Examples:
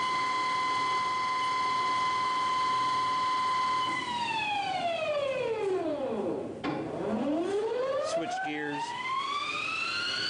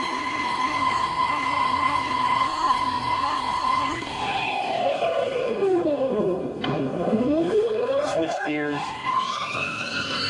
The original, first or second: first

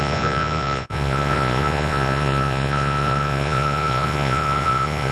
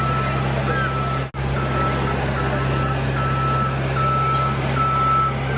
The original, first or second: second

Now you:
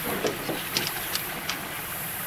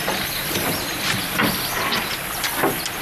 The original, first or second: second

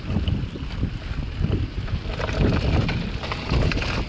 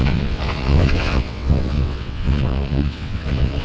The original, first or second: first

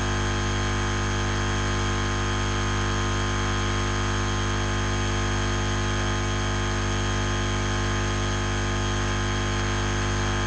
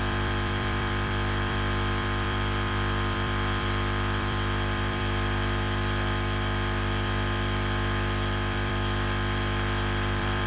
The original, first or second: first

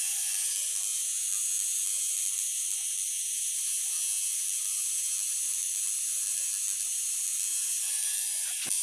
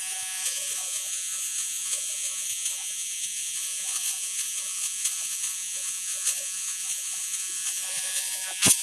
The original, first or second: first